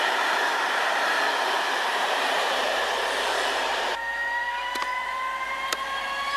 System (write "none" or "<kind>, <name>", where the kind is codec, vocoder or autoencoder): vocoder, BigVGAN v2